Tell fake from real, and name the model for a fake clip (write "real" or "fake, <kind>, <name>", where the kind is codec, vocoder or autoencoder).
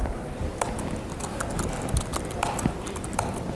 real